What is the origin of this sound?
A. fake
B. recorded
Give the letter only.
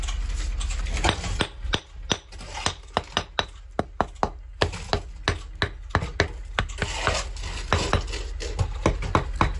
B